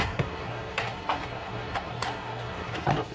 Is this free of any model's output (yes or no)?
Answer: no